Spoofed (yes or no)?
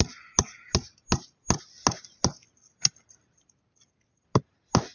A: no